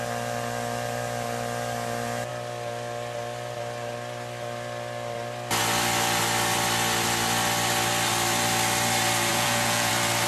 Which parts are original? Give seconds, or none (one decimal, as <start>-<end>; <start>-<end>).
0.0-9.3; 9.9-10.3